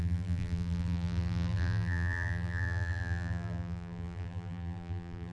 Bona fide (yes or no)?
no